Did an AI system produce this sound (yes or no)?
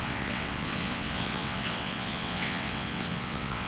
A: yes